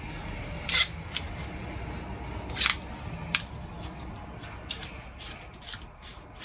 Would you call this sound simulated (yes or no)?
no